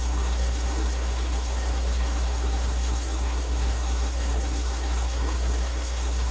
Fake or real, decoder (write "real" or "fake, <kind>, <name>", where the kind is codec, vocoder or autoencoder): fake, codec, SNAC